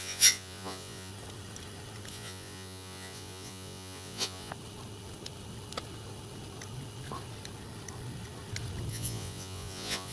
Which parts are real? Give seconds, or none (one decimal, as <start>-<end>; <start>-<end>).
1.1-2.1; 4.5-8.9